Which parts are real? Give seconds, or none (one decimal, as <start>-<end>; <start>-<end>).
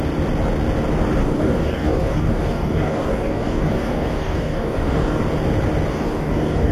0.0-1.2; 5.2-5.9